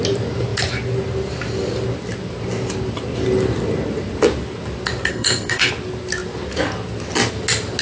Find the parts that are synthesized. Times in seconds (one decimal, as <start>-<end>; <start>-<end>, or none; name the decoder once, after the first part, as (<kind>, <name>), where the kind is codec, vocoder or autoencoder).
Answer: 5.1-5.7 (codec, SNAC)